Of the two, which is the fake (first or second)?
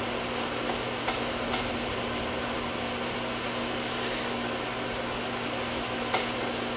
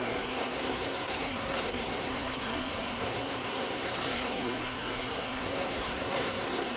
second